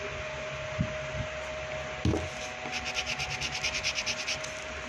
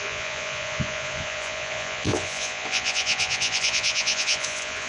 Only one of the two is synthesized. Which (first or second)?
second